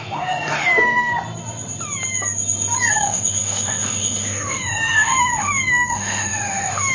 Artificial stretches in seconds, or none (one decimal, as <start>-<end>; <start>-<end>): 0.0-1.1; 2.9-6.9